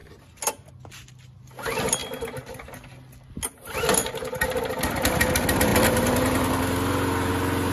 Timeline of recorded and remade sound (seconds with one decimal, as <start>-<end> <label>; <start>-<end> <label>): 0.0-7.7 recorded